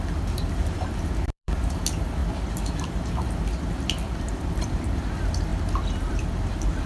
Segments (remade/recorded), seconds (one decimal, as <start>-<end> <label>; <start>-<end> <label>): 0.0-5.5 remade; 5.5-6.1 recorded; 6.1-6.9 remade